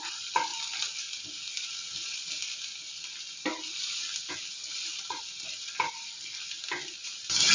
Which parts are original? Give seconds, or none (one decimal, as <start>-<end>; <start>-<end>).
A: 0.0-7.5